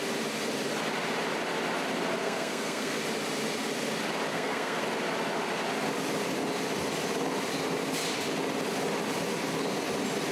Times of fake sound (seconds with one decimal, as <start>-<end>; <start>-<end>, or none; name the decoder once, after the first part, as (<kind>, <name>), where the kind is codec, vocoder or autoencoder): 2.2-3.0 (codec, SNAC); 4.3-4.8